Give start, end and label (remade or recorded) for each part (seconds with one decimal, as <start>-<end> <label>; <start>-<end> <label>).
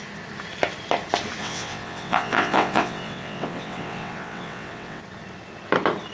0.0-1.4 recorded; 1.4-5.0 remade; 5.0-6.1 recorded